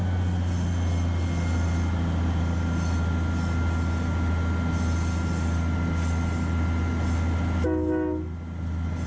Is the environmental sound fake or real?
real